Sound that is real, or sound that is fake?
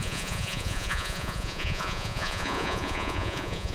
fake